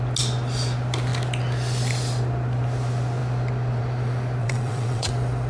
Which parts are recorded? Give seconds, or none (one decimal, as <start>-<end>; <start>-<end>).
0.0-4.4; 5.1-5.5